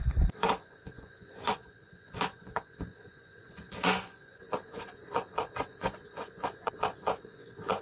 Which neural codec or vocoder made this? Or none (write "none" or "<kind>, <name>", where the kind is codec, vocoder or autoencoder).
vocoder, Vocos